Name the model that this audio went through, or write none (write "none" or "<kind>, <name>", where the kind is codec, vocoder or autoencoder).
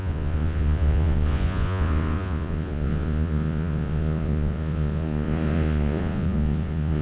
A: vocoder, Vocos